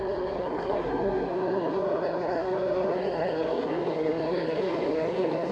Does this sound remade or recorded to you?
remade